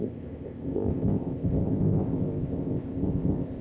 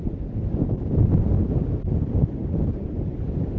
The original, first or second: second